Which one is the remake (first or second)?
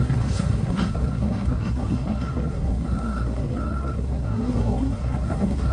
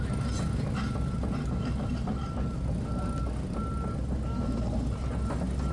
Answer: first